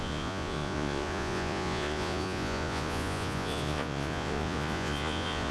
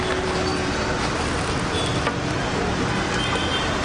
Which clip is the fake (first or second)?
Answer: first